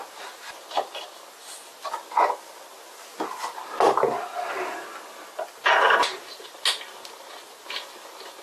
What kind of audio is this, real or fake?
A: real